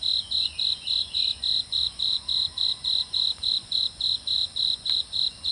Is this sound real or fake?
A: fake